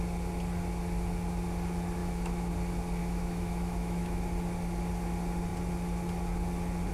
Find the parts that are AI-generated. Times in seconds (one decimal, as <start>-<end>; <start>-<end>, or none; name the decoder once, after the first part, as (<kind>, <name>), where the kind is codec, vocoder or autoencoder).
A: 2.0-2.5 (autoencoder, DAC-VAE); 3.0-4.2